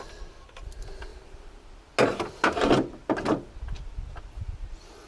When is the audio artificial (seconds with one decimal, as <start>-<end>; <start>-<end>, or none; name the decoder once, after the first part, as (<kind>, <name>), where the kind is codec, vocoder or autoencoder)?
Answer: none